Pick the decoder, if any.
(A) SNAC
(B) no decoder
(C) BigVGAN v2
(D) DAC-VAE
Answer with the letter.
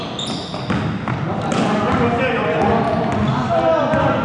B